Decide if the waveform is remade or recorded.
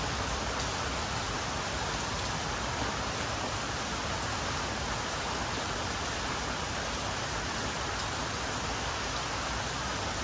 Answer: recorded